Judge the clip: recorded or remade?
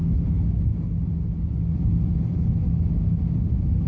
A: recorded